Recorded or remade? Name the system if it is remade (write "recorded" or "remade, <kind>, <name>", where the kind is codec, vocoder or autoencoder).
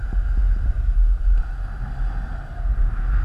recorded